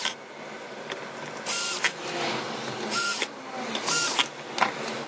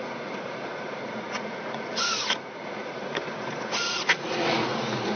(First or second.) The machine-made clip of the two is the second